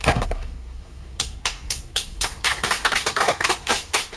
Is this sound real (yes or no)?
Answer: no